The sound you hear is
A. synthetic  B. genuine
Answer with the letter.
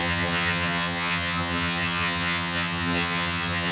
A